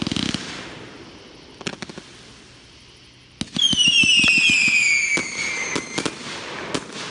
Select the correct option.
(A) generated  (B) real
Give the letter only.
B